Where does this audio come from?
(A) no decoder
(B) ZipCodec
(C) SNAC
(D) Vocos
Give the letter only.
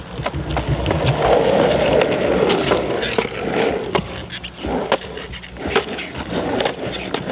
A